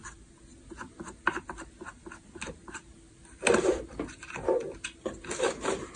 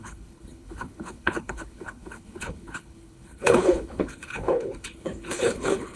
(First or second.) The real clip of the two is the first